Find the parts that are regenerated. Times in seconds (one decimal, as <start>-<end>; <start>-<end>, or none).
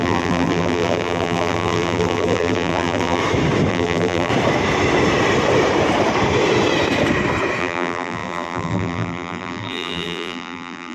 0.0-3.2; 3.7-4.3; 7.6-10.9